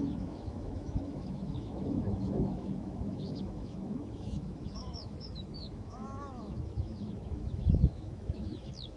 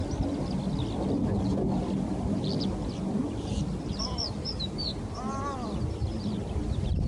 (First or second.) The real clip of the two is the second